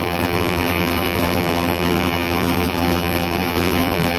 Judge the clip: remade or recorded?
remade